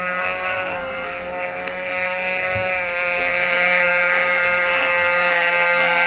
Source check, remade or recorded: remade